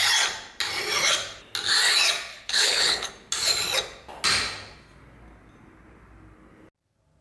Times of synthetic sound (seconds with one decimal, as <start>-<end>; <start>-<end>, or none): 2.3-3.1